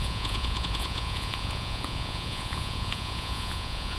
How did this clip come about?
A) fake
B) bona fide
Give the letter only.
A